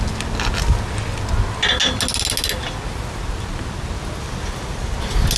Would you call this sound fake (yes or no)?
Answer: no